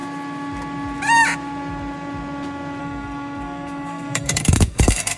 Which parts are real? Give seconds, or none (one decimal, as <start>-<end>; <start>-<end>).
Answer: 0.0-2.8